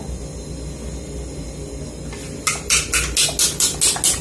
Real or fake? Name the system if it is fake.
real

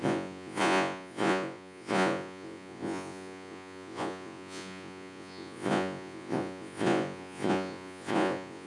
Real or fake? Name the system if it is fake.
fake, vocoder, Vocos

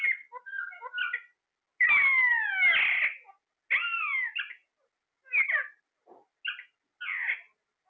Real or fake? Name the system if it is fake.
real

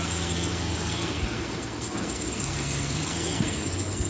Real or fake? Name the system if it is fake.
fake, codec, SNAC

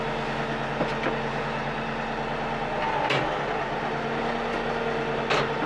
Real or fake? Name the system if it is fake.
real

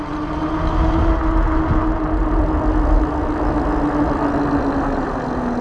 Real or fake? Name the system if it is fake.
real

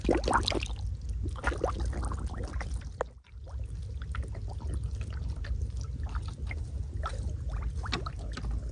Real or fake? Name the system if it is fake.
real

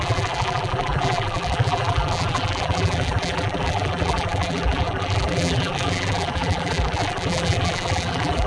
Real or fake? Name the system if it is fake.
fake, vocoder, BigVGAN v2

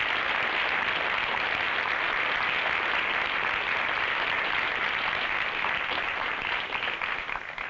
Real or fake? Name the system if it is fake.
real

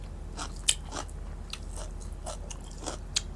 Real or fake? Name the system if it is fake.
real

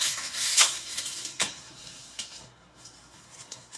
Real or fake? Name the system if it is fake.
fake, codec, SNAC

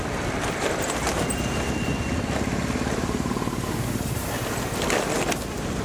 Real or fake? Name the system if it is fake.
fake, vocoder, BigVGAN v2